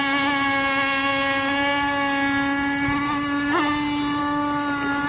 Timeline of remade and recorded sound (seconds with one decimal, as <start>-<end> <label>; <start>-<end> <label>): 0.0-5.1 recorded